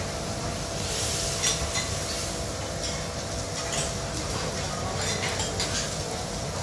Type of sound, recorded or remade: recorded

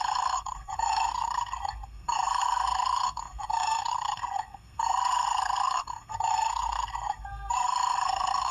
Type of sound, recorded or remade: remade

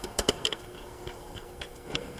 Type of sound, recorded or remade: remade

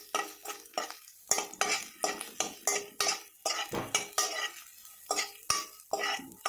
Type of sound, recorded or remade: recorded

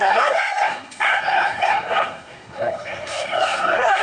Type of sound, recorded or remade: remade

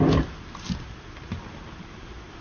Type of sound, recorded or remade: recorded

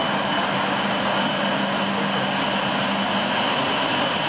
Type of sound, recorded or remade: recorded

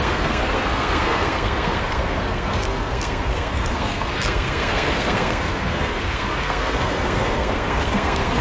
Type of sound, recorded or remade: remade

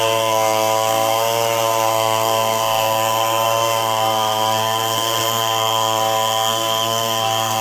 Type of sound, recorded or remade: remade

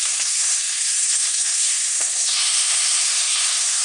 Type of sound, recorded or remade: remade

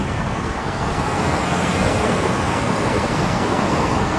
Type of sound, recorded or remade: remade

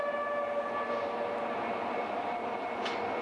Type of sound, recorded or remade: recorded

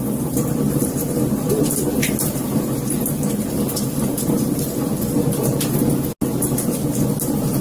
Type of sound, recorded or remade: recorded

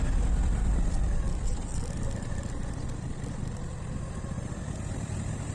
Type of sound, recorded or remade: recorded